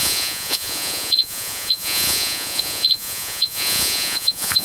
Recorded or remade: remade